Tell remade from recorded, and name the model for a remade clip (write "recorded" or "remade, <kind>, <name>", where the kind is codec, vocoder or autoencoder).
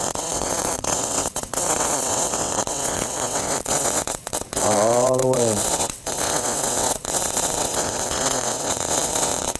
remade, vocoder, WaveNeXt